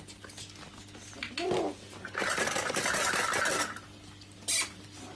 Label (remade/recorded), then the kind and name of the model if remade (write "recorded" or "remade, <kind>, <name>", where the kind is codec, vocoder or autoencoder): recorded